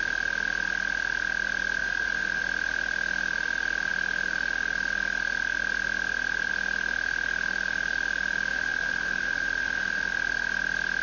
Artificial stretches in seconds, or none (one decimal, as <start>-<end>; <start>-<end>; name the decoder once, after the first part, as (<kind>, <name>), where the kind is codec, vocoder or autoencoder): 1.8-2.4 (vocoder, BigVGAN v2); 8.5-10.1